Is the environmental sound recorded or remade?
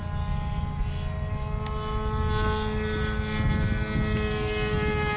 recorded